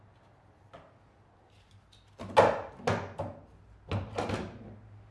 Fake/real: real